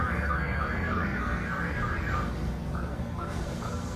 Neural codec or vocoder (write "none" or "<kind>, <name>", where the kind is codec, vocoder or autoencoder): codec, SNAC